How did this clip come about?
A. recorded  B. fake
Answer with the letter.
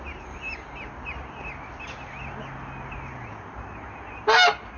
A